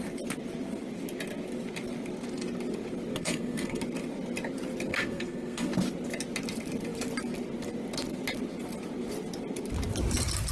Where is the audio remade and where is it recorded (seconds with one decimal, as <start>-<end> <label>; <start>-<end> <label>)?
0.0-3.1 recorded; 3.1-3.8 remade; 3.8-4.9 recorded; 4.9-5.7 remade; 5.7-10.5 recorded